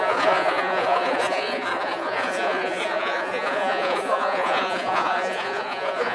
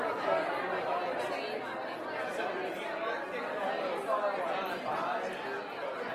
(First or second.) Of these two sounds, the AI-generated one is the first